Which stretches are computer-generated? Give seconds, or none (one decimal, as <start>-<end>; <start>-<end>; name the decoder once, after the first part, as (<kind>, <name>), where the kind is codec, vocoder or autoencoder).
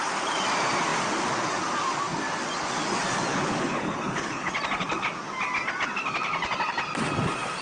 3.3-4.5 (codec, HILCodec)